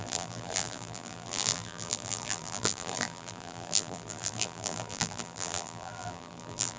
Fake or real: fake